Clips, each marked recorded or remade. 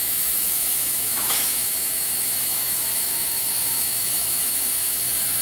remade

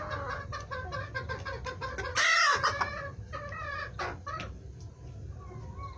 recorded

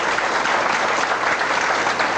recorded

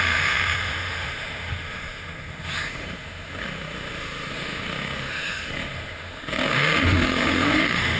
remade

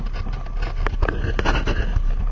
recorded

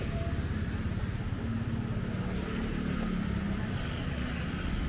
recorded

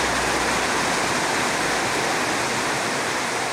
recorded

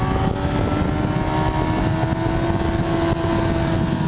recorded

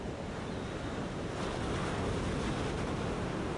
recorded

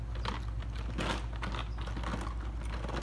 recorded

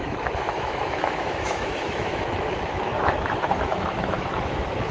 remade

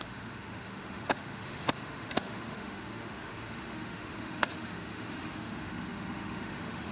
remade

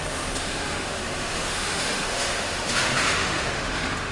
remade